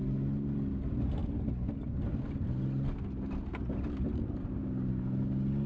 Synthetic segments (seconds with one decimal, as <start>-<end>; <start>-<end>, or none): none